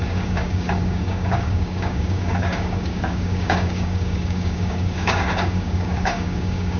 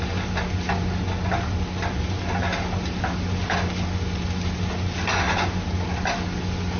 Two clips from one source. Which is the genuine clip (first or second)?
second